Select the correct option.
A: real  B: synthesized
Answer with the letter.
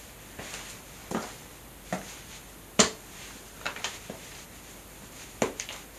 B